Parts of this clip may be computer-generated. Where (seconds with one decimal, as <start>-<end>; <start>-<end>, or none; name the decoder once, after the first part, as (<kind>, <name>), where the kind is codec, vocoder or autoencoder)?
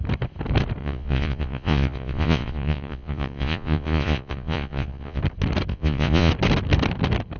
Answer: 0.8-5.2 (vocoder, Vocos); 5.7-6.3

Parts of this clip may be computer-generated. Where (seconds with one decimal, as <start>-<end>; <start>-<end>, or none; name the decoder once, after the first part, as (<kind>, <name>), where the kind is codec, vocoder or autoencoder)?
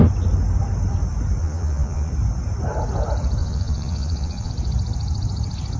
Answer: 1.4-2.1 (vocoder, Vocos); 3.4-4.5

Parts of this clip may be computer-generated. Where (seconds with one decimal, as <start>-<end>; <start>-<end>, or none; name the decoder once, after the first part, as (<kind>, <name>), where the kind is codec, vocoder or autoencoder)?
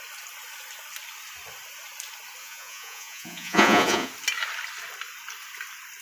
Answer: 2.4-4.1 (vocoder, Vocos)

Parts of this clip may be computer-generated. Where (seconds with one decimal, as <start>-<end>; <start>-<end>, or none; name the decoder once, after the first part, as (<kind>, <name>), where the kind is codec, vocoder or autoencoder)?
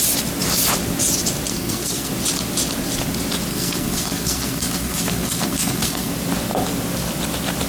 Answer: 1.5-2.1 (codec, SNAC); 3.5-6.1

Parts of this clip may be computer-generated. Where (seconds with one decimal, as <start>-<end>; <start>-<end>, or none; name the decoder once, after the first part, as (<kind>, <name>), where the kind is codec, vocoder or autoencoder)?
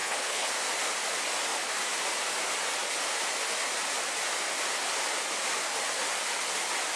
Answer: 0.0-0.5 (codec, HILCodec)